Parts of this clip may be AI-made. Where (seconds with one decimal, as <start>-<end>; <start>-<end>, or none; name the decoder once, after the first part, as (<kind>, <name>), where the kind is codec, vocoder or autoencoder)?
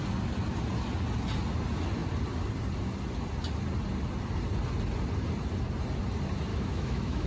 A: 6.5-7.3 (autoencoder, DAC-VAE)